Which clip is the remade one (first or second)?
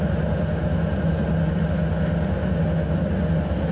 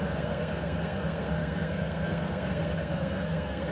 second